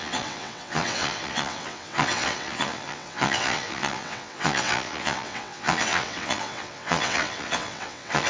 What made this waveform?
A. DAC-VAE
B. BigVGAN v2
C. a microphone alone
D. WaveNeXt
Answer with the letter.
D